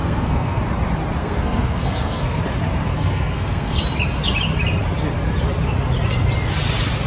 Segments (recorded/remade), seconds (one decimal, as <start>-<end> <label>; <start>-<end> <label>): 0.0-0.6 remade; 0.6-1.2 recorded; 1.2-2.4 remade; 2.4-2.9 recorded; 2.9-3.8 remade; 3.8-7.1 recorded